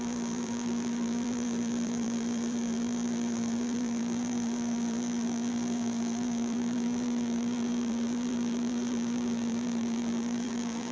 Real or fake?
fake